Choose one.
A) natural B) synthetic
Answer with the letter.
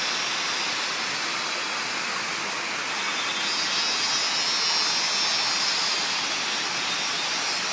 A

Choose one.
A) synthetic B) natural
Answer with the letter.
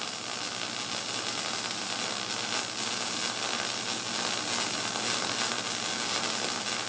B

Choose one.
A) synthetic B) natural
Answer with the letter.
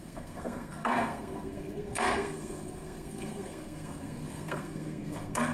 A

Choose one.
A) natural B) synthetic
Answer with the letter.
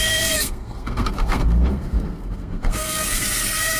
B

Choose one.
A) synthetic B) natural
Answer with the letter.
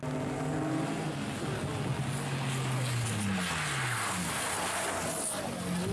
B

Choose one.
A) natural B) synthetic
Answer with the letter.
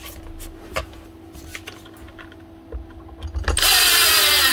A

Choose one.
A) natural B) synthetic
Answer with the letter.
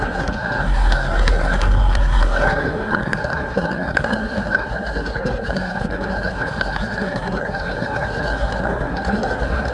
B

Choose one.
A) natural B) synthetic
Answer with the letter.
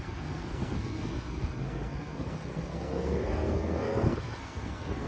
B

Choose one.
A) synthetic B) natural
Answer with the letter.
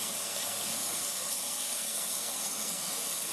A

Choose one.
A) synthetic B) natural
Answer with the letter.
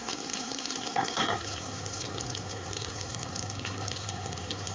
A